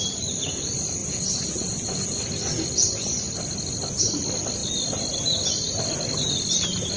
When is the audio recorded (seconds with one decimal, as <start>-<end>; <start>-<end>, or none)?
0.0-1.0; 2.2-7.0